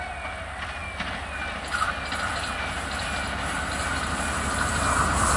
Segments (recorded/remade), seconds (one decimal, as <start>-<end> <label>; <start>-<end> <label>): 0.0-5.4 recorded